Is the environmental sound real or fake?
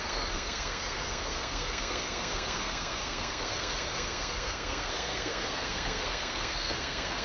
fake